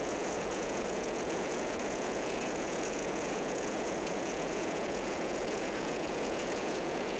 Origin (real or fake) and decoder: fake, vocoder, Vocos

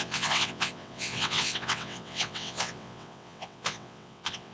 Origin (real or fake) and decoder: fake, vocoder, WaveNeXt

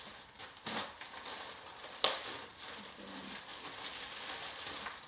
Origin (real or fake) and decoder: real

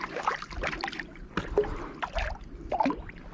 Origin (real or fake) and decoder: real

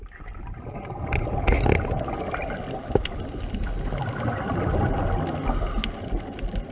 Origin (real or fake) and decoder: real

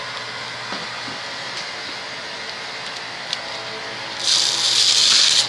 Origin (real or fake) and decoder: real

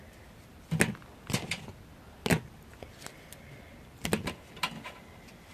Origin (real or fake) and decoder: real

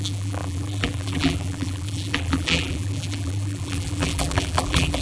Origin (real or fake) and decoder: fake, vocoder, BigVGAN v2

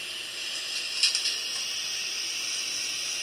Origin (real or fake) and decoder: real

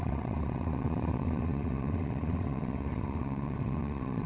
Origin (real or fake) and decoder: fake, vocoder, WaveNeXt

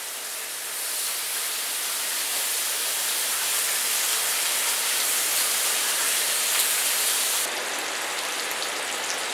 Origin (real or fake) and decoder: real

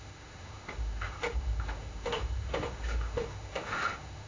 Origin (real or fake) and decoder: fake, autoencoder, DAC-VAE